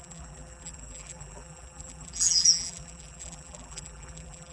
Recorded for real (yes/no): no